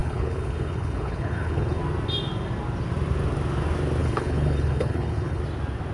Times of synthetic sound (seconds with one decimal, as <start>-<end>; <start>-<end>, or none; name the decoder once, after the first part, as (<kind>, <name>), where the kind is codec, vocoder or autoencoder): 0.0-1.8 (codec, HILCodec); 4.0-5.4